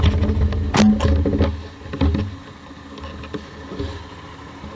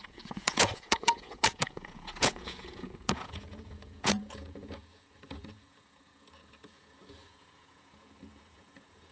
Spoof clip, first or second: second